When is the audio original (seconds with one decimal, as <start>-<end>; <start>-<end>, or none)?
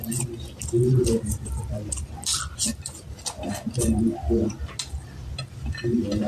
0.0-6.3